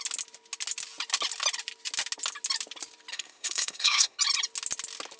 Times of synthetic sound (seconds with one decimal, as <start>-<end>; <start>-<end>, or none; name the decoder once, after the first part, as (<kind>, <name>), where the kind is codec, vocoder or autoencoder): 3.1-4.2 (codec, SNAC)

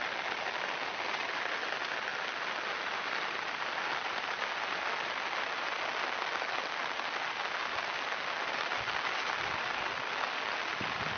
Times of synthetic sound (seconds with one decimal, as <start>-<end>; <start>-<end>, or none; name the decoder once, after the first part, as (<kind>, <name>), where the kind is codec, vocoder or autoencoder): none

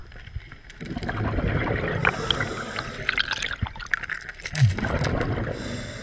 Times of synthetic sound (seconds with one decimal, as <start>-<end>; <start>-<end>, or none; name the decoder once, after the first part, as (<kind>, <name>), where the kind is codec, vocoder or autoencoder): none

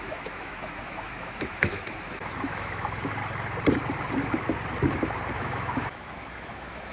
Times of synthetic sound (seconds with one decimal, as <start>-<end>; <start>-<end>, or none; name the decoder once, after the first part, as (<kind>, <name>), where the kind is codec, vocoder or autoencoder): 0.0-3.2 (autoencoder, DAC-VAE); 5.3-6.9

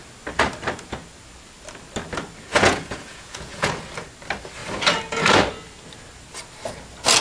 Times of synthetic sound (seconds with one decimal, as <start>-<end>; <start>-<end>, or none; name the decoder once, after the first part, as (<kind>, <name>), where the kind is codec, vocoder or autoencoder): 2.5-3.7 (vocoder, Vocos)

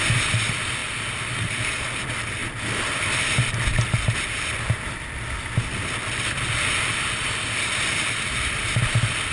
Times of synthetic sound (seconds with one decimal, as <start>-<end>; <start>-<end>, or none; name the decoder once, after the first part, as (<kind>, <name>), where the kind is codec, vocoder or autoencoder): none

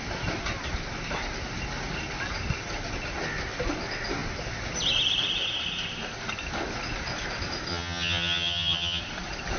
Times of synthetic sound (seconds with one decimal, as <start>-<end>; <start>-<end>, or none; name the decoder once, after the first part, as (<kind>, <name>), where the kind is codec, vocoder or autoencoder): 7.7-9.0 (vocoder, HiFi-GAN)